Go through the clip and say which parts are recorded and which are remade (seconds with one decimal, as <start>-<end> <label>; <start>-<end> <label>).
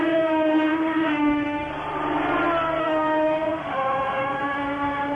0.0-1.7 remade; 1.7-2.8 recorded; 2.8-5.2 remade